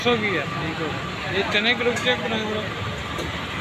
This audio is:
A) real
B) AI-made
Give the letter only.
A